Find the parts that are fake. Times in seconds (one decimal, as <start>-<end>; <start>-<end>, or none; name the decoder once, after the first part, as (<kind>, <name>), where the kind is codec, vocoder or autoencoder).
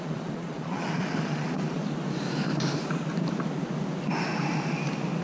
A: 0.0-1.8 (vocoder, Vocos)